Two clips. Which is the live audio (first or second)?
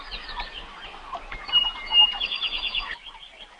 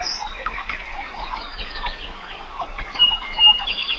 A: first